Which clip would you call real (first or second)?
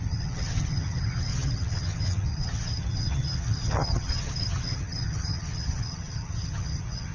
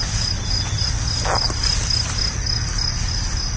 second